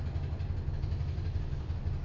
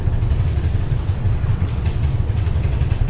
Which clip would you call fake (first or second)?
second